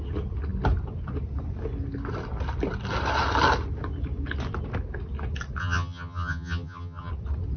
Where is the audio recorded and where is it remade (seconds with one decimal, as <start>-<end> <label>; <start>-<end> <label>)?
0.0-5.6 recorded; 5.6-7.1 remade; 7.1-7.6 recorded